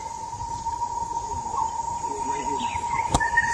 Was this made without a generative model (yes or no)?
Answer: yes